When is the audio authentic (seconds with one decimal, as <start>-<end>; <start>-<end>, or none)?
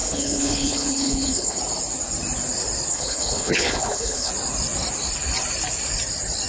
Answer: 1.6-2.9; 4.3-6.5